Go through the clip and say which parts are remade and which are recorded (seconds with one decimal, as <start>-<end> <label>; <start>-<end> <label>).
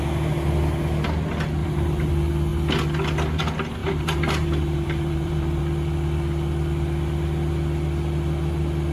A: 0.0-1.6 recorded; 1.6-2.1 remade; 2.1-3.8 recorded; 3.8-5.6 remade; 5.6-8.9 recorded